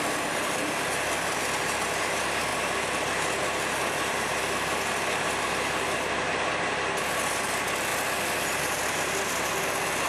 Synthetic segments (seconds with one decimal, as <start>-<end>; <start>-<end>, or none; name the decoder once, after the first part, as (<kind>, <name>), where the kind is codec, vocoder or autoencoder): 2.5-5.5 (vocoder, BigVGAN v2)